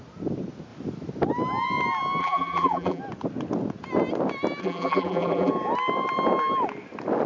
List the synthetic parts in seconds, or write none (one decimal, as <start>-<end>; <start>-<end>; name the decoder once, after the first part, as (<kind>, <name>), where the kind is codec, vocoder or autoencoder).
2.2-3.0 (vocoder, BigVGAN v2); 4.6-5.5